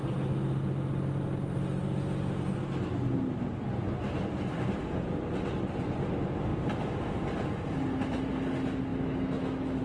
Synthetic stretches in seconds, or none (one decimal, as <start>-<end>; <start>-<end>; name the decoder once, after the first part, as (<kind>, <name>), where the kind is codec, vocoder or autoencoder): 8.9-9.8 (autoencoder, DAC-VAE)